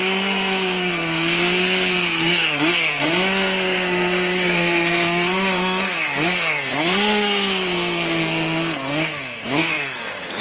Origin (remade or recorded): remade